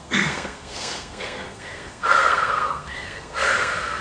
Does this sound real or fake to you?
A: fake